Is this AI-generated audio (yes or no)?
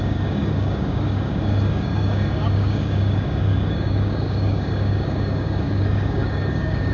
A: yes